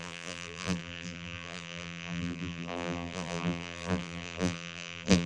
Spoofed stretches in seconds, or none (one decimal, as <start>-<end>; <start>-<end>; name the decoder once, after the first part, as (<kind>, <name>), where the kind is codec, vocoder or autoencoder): 0.0-5.3 (vocoder, BigVGAN v2)